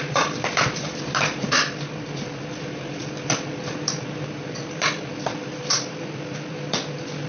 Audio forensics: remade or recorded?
remade